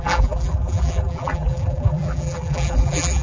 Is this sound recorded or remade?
remade